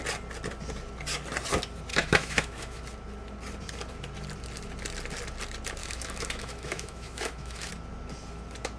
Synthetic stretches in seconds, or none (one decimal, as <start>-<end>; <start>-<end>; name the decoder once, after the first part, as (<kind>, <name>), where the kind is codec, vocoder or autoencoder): 1.9-2.8 (autoencoder, DAC-VAE); 5.8-7.7